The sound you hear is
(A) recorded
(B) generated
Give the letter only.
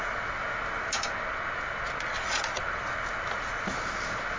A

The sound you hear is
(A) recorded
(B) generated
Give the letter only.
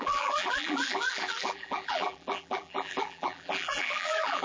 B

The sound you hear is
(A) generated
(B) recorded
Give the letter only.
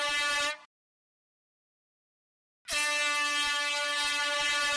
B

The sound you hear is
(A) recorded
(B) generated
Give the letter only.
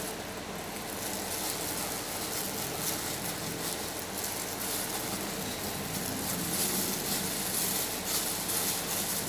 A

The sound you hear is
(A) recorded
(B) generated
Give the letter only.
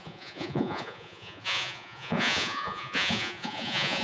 B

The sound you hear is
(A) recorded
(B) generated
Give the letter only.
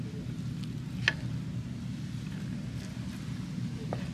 A